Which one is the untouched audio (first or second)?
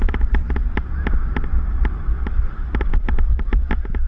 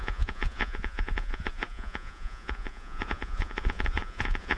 first